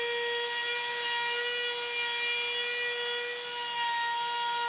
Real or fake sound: real